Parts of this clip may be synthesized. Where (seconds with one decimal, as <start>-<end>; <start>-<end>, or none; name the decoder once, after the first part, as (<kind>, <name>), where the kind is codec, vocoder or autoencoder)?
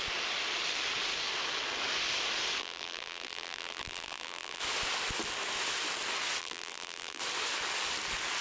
2.6-4.6 (vocoder, BigVGAN v2); 6.4-7.2